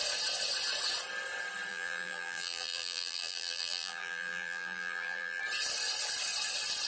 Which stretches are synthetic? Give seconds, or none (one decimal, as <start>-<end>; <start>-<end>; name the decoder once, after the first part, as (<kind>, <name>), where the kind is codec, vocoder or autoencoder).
1.7-5.4 (vocoder, BigVGAN v2)